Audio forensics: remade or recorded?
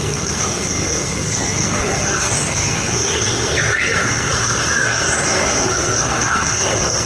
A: remade